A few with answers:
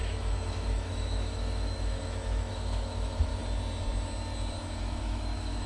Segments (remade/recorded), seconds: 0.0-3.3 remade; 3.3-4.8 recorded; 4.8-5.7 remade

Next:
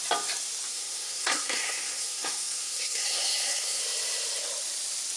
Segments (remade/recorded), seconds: 0.0-0.7 recorded; 0.7-3.8 remade; 3.8-5.2 recorded

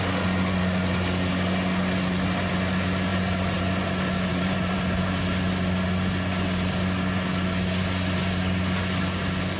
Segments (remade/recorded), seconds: 0.0-3.1 recorded; 3.1-3.6 remade; 3.6-4.3 recorded; 4.3-5.2 remade; 5.2-9.6 recorded

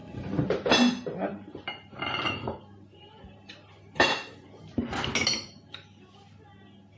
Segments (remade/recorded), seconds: 0.0-0.7 remade; 0.7-1.3 recorded; 1.3-4.6 remade; 4.6-7.0 recorded

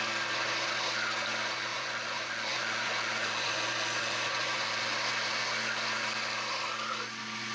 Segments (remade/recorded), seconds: 0.0-1.7 recorded; 1.7-4.9 remade; 4.9-7.5 recorded

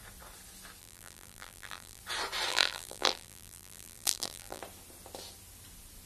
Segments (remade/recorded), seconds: 0.0-0.8 recorded; 0.8-2.0 remade; 2.0-2.5 recorded; 2.5-4.6 remade; 4.6-6.1 recorded

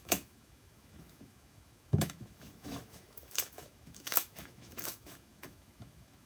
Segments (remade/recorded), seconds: 0.0-6.3 remade

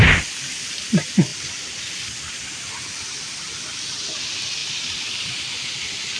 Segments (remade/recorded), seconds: 0.0-6.2 recorded